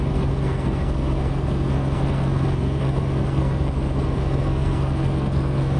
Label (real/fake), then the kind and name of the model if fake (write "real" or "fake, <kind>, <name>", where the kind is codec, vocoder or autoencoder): fake, codec, SNAC